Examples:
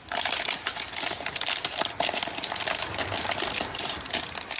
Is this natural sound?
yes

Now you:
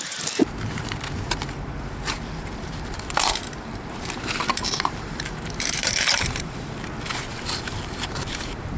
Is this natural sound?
no